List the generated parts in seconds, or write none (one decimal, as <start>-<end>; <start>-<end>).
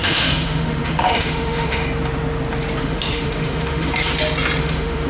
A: 0.0-1.8; 2.8-3.9; 4.6-5.1